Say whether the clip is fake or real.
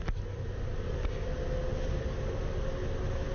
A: real